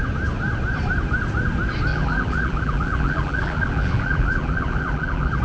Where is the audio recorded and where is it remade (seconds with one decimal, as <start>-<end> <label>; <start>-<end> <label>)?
0.0-1.9 recorded; 1.9-5.4 remade